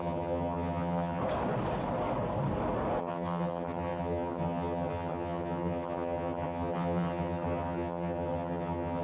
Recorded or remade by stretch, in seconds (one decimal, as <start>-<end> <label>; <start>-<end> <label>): 0.0-1.2 remade; 1.2-3.0 recorded; 3.0-9.0 remade